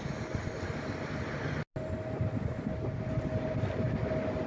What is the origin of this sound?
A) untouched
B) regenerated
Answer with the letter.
A